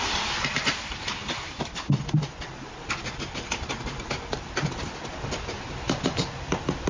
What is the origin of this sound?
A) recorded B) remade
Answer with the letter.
A